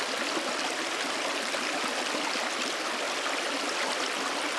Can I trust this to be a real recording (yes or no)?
yes